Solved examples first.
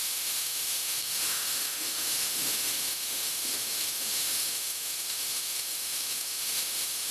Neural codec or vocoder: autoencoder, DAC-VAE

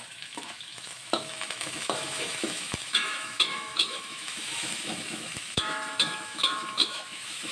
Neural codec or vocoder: autoencoder, DAC-VAE